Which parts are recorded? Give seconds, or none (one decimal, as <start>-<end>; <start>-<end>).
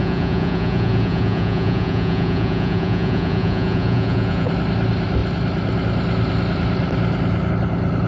4.5-8.1